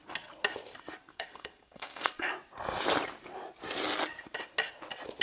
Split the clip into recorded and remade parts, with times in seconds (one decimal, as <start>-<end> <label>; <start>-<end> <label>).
0.0-1.1 recorded; 1.1-2.3 remade; 2.3-5.2 recorded